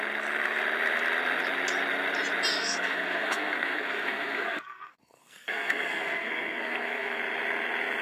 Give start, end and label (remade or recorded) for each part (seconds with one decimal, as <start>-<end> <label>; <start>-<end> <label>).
0.0-2.5 recorded; 2.5-7.2 remade; 7.2-8.0 recorded